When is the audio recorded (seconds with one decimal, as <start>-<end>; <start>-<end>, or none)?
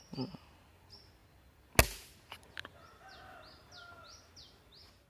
0.0-5.1